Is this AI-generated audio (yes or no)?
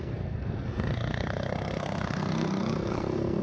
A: yes